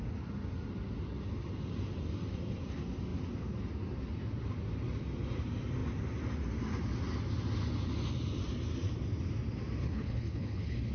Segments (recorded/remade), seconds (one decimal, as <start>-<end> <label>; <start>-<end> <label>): 0.0-9.8 recorded; 9.8-10.9 remade